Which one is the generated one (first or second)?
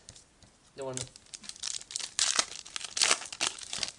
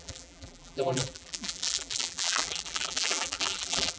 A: second